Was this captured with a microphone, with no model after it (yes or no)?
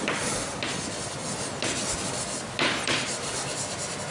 yes